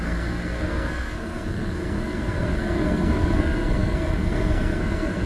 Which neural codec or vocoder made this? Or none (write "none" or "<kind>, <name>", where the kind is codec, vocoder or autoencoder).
codec, SNAC